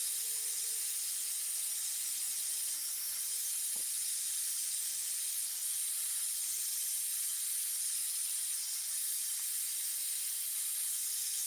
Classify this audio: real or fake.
real